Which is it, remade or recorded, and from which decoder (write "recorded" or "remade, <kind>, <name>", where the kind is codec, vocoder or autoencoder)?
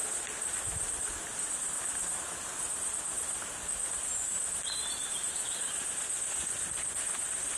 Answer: recorded